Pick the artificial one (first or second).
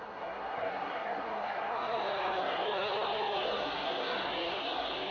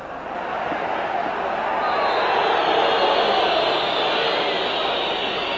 first